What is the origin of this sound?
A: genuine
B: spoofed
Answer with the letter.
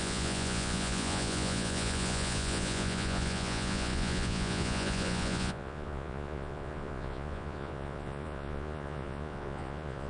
B